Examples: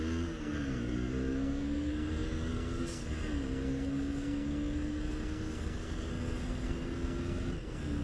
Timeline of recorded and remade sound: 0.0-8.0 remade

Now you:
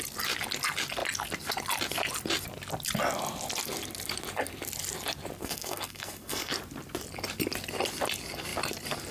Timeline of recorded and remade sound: 0.0-5.4 recorded; 5.4-6.5 remade; 6.5-9.1 recorded

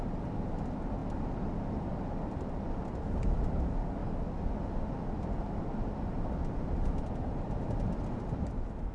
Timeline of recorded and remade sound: 0.0-8.9 recorded

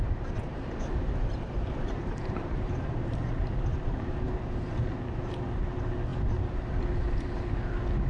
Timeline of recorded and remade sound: 0.0-0.4 recorded; 0.4-3.3 remade; 3.3-3.7 recorded; 3.7-4.9 remade; 4.9-6.1 recorded; 6.1-6.8 remade; 6.8-8.1 recorded